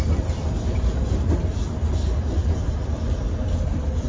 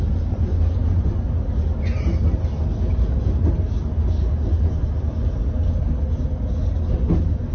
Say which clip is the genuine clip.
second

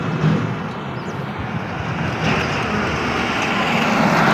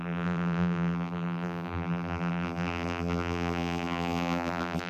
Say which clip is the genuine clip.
first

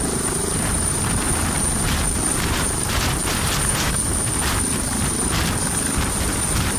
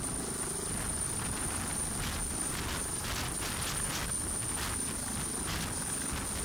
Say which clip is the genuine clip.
second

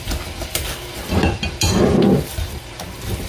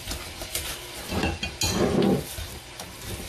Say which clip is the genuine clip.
second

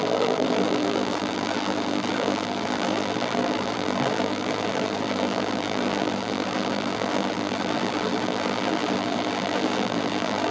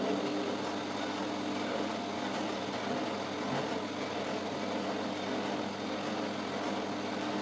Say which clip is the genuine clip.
second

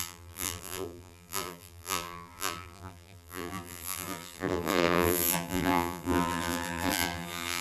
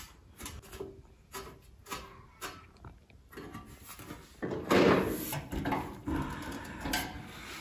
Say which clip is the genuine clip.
second